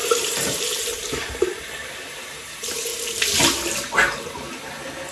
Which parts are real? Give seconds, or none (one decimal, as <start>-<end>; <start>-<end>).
2.9-5.1